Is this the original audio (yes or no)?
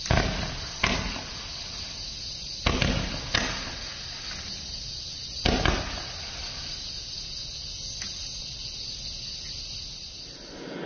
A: yes